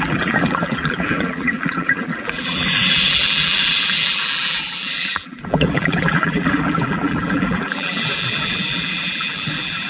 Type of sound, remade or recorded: remade